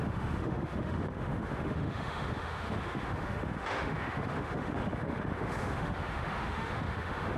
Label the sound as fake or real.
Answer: fake